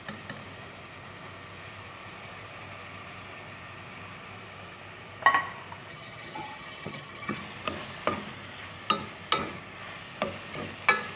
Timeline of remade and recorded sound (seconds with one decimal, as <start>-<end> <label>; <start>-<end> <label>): 0.0-5.9 recorded; 5.9-7.4 remade; 7.4-11.2 recorded